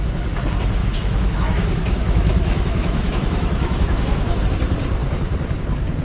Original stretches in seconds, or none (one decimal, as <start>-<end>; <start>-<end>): 0.0-0.8; 4.4-6.0